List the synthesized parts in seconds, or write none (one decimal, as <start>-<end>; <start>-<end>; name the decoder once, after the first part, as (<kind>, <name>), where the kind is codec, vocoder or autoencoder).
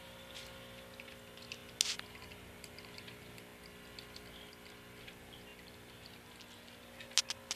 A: none